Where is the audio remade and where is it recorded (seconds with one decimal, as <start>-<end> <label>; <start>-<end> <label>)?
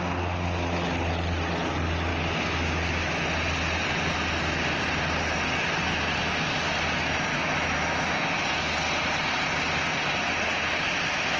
0.0-7.3 recorded; 7.3-8.1 remade; 8.1-11.4 recorded